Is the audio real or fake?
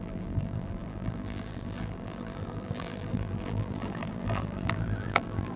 fake